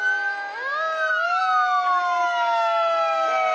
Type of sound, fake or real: real